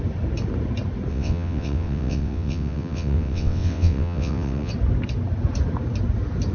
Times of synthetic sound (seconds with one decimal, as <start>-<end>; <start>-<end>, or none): 1.1-4.7